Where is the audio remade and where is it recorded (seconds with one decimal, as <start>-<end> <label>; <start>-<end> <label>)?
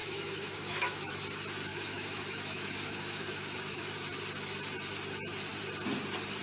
0.0-1.1 remade; 1.1-1.7 recorded; 1.7-3.9 remade; 3.9-6.4 recorded